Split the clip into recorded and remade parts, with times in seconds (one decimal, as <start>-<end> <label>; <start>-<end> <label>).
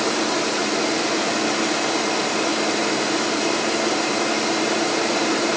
0.0-0.6 remade; 0.6-1.7 recorded; 1.7-5.6 remade